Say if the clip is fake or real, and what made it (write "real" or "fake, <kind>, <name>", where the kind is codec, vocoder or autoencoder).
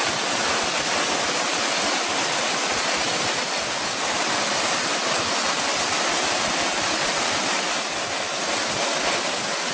real